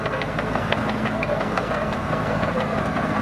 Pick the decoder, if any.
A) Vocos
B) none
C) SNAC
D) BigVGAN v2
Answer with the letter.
C